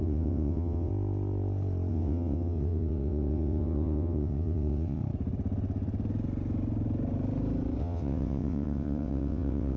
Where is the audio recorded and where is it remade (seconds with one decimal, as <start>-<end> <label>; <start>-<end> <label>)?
0.0-0.9 remade; 0.9-1.9 recorded; 1.9-5.0 remade; 5.0-7.8 recorded; 7.8-9.8 remade